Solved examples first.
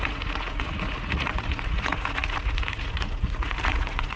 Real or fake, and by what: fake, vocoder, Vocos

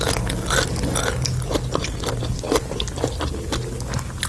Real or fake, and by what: real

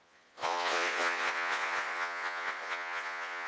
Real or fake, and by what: fake, vocoder, Vocos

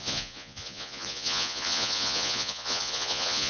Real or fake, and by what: fake, vocoder, Vocos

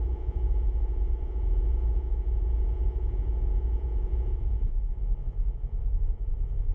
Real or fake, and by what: fake, vocoder, Vocos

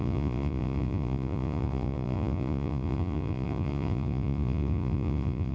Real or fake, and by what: fake, vocoder, Vocos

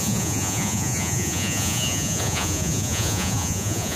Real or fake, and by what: fake, vocoder, Vocos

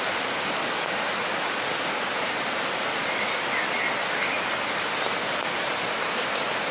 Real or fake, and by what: real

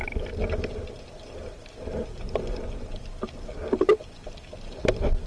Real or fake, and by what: real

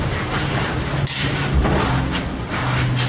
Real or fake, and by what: real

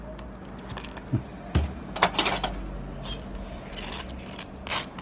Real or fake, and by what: real